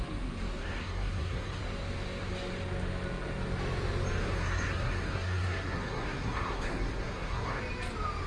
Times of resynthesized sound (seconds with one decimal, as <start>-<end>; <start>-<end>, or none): 0.6-1.6; 4.2-7.6